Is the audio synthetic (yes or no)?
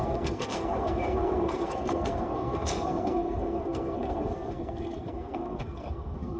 yes